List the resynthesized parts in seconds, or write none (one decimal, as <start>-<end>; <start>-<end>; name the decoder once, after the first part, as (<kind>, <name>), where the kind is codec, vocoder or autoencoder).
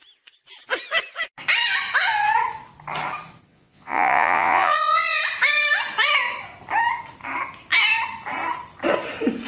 3.5-5.2 (vocoder, Vocos)